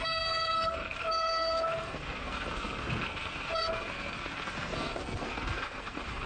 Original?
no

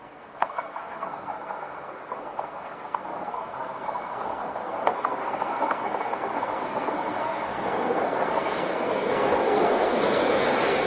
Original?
no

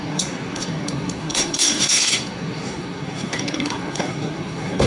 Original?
no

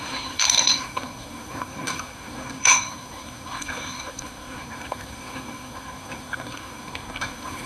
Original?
no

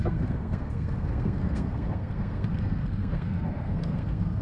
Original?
no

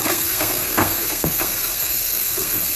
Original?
no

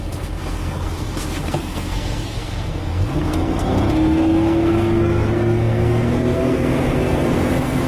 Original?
no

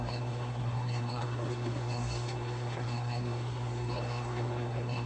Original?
no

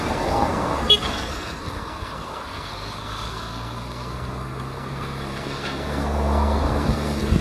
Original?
no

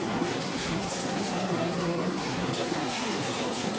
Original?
no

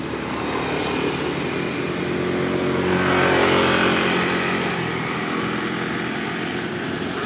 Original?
yes